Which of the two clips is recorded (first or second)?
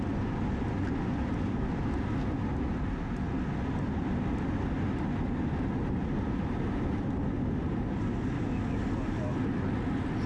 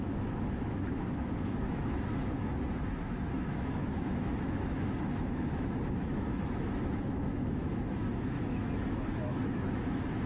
first